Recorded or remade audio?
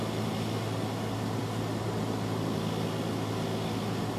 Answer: recorded